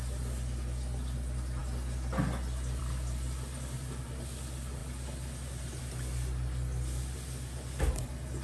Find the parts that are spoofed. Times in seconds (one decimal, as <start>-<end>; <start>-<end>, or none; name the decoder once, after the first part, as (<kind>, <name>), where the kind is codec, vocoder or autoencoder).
none